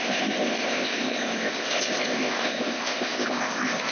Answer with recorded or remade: remade